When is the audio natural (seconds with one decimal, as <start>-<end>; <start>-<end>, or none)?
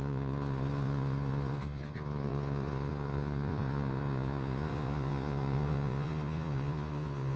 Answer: none